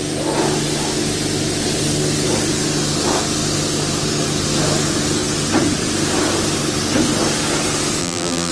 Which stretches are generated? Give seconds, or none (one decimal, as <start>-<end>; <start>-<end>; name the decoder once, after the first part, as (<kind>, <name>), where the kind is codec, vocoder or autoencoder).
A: 8.0-8.5 (vocoder, BigVGAN v2)